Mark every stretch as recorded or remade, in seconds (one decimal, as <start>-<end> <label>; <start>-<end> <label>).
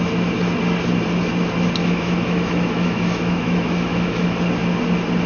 0.0-1.8 recorded; 1.8-4.4 remade; 4.4-5.3 recorded